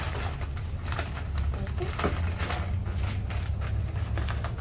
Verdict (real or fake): real